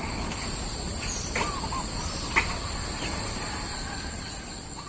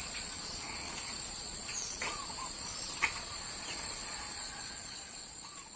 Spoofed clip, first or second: second